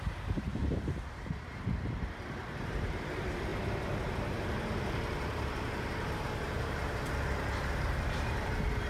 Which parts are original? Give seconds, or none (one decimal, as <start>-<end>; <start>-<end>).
none